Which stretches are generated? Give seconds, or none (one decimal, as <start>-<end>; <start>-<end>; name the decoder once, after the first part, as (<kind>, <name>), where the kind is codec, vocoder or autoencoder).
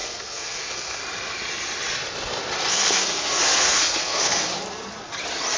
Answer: 0.0-1.0 (codec, SNAC); 2.7-4.5